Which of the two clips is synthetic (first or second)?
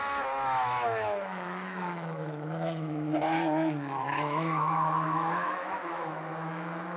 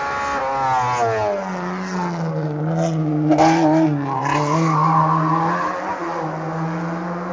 first